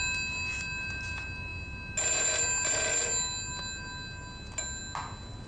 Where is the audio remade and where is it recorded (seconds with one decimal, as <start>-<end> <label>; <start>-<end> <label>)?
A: 0.0-5.5 recorded